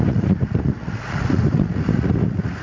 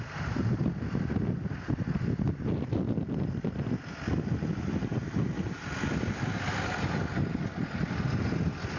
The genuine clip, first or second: second